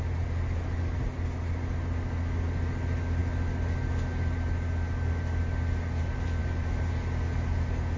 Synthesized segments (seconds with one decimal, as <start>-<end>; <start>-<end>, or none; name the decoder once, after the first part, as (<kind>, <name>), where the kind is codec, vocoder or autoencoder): none